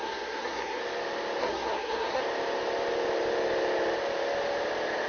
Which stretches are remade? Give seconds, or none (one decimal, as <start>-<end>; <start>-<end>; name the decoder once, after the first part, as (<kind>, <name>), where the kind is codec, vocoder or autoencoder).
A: 0.0-0.8 (codec, SNAC); 1.4-2.2